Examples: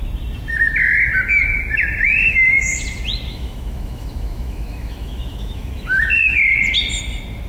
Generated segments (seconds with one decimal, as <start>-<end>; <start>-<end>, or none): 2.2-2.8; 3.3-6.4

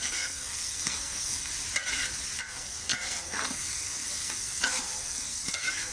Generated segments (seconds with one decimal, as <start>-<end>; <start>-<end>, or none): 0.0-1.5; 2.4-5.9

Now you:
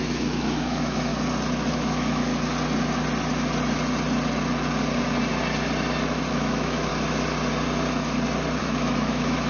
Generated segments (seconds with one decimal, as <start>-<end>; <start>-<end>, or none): 0.0-1.1; 1.7-2.3; 6.3-6.9; 8.6-9.5